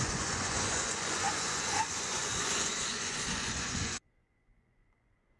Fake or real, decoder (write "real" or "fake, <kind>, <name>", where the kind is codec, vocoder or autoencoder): fake, vocoder, Vocos